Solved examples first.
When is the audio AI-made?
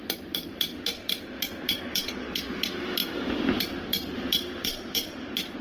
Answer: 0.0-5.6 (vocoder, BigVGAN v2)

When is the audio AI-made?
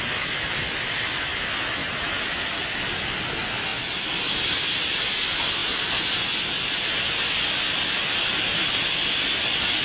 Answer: 1.8-2.5 (vocoder, BigVGAN v2)